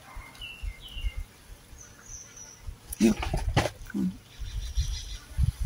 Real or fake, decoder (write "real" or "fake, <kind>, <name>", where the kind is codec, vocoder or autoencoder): real